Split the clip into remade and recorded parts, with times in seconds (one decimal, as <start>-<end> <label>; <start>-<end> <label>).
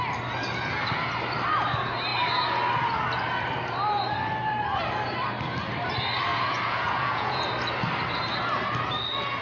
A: 0.0-6.3 recorded; 6.3-7.4 remade; 7.4-9.4 recorded